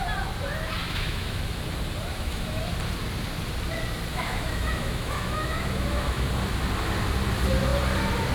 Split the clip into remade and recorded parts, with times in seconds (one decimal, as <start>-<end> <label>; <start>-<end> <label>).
0.0-0.8 recorded; 0.8-1.4 remade; 1.4-2.1 recorded; 2.1-2.6 remade; 2.6-4.1 recorded; 4.1-6.3 remade; 6.3-8.3 recorded